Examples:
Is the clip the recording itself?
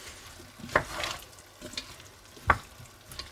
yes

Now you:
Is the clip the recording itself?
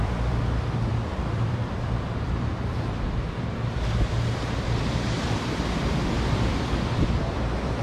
no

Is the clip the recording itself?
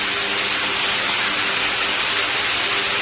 yes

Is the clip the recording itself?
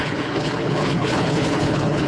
no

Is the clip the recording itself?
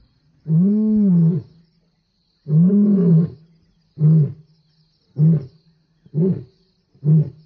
yes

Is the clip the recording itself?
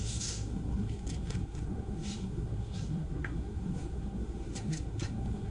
no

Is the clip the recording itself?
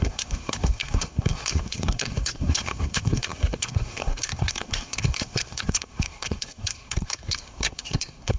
no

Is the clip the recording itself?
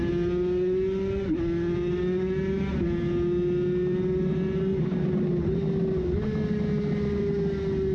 yes